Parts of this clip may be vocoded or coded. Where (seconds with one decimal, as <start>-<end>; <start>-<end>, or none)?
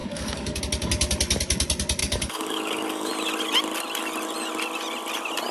0.0-0.6; 2.0-3.1